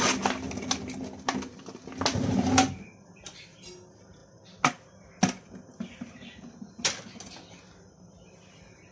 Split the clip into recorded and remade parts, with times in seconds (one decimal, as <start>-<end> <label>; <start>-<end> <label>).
0.0-8.9 recorded